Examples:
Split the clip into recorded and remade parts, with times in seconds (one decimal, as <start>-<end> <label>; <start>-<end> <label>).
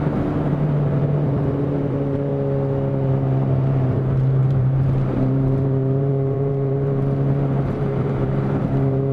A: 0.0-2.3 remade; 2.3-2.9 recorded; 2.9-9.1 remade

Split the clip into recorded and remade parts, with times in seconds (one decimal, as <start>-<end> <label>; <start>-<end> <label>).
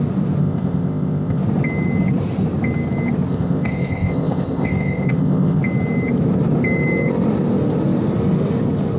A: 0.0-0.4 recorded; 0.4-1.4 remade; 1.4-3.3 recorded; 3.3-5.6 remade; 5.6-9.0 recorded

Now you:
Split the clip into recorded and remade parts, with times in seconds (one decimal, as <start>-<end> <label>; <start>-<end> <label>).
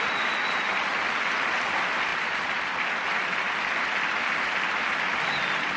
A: 0.0-5.8 recorded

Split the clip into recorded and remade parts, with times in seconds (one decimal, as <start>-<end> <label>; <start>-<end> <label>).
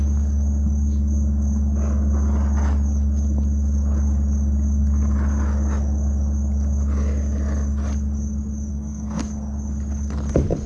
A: 0.0-8.7 recorded; 8.7-9.2 remade; 9.2-10.7 recorded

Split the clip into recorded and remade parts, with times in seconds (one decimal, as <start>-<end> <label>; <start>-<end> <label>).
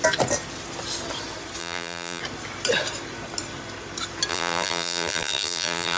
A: 0.0-1.6 recorded; 1.6-2.2 remade; 2.2-4.3 recorded; 4.3-6.0 remade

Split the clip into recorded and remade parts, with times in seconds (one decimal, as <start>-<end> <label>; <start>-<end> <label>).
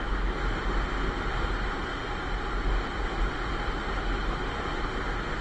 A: 0.0-5.4 recorded